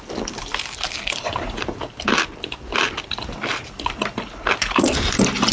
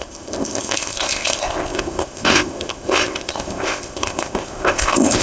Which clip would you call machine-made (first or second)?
second